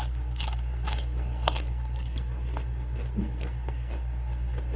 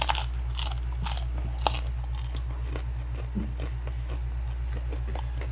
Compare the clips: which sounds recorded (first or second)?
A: second